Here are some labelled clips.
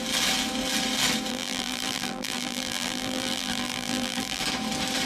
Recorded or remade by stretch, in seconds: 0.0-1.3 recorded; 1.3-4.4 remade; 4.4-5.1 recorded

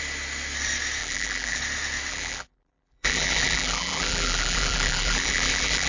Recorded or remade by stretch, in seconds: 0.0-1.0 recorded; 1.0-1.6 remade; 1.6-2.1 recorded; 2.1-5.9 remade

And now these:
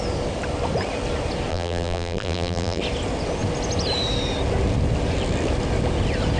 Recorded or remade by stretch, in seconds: 0.0-1.5 recorded; 1.5-2.8 remade; 2.8-6.4 recorded

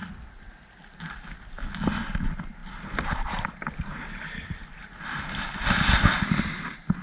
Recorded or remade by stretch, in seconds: 0.0-7.0 recorded

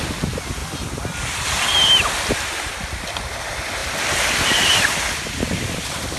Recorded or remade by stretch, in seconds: 0.0-3.8 recorded; 3.8-6.2 remade